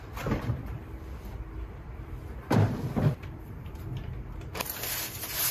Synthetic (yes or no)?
yes